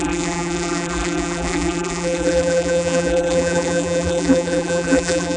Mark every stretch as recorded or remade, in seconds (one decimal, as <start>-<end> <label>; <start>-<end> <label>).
0.0-5.4 remade